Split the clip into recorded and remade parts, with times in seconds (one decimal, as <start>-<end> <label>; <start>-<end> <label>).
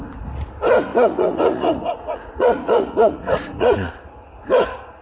0.0-0.9 recorded; 0.9-3.9 remade; 3.9-5.0 recorded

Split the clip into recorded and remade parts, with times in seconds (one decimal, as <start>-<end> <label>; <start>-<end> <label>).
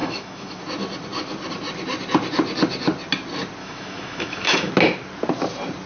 0.0-0.6 remade; 0.6-3.6 recorded; 3.6-4.7 remade; 4.7-5.9 recorded